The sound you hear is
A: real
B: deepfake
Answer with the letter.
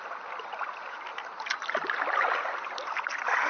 A